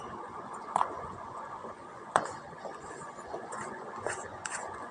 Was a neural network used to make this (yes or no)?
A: yes